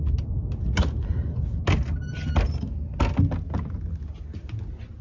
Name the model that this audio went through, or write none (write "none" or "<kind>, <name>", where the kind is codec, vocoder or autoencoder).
none